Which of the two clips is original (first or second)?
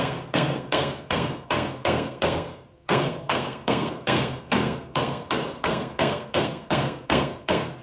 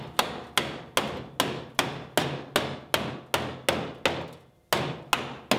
second